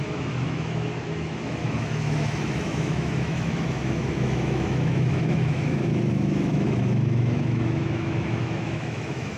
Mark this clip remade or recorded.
remade